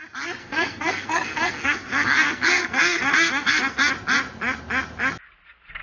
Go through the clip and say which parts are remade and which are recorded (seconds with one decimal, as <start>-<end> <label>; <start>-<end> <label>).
0.0-0.4 recorded; 0.4-3.9 remade; 3.9-5.8 recorded